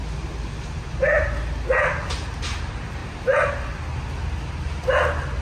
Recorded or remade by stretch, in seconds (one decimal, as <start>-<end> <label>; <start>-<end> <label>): 0.0-2.6 recorded; 2.6-3.0 remade; 3.0-5.4 recorded